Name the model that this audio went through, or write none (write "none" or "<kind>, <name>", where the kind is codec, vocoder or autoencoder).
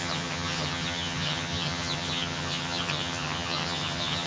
vocoder, HiFi-GAN